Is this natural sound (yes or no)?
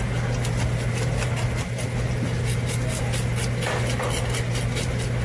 yes